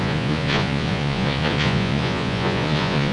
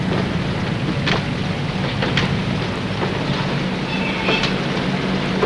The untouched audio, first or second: second